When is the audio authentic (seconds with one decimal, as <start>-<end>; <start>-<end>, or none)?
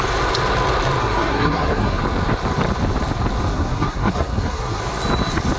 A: 0.0-1.0; 2.0-3.5; 4.8-5.6